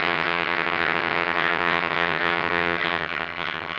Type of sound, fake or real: fake